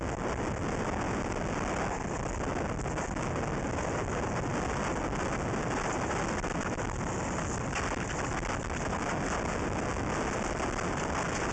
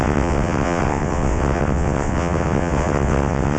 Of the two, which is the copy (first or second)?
second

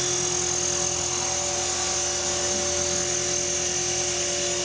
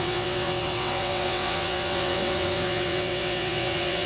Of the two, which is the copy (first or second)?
second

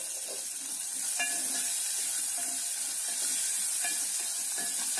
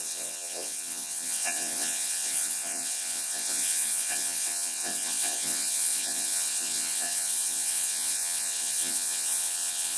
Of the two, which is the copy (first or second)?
second